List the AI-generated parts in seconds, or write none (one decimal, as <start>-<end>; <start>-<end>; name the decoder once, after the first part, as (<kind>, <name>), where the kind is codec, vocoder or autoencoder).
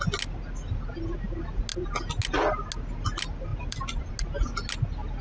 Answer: 3.5-4.1 (vocoder, BigVGAN v2)